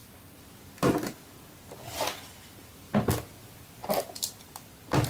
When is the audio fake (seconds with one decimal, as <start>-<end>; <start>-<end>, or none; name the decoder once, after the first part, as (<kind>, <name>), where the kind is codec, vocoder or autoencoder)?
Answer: none